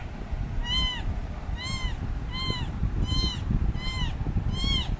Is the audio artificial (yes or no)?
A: no